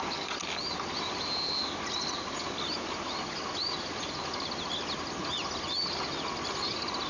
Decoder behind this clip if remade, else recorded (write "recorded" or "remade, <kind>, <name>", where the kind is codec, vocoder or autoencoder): recorded